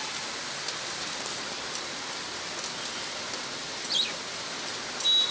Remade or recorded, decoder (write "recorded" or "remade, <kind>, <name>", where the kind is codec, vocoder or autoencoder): recorded